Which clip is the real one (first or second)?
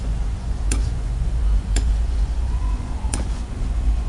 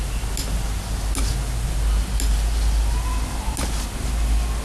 second